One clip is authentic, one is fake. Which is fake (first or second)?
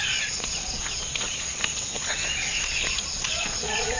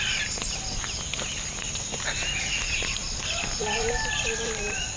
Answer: first